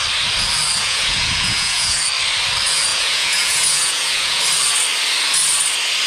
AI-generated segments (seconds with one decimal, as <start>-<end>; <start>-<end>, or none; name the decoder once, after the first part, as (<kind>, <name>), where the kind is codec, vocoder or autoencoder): 0.8-2.0 (vocoder, Vocos); 2.9-4.4